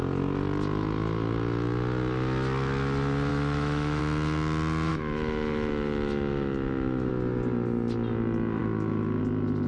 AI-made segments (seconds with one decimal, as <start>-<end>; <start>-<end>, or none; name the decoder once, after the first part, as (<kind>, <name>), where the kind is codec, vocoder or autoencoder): 3.3-4.0 (autoencoder, DAC-VAE); 4.9-7.1; 8.6-9.2